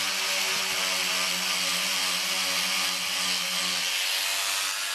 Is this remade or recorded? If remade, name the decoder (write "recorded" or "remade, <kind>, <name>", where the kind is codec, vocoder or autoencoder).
recorded